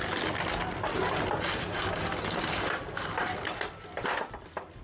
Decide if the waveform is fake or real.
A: real